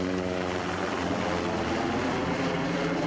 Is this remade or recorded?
remade